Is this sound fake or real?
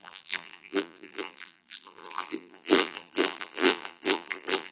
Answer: fake